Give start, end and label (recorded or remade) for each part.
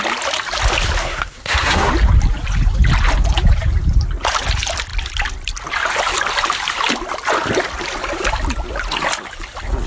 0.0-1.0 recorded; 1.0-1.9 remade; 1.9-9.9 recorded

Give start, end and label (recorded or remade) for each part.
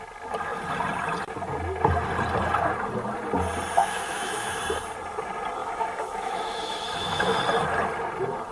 0.0-3.8 recorded; 3.8-4.6 remade; 4.6-5.6 recorded; 5.6-7.4 remade; 7.4-8.5 recorded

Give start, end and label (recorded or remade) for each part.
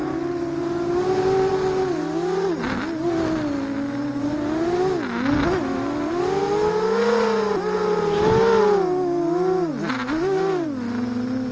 0.0-11.5 recorded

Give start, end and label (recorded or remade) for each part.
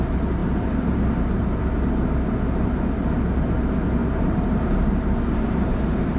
0.0-4.0 recorded; 4.0-6.2 remade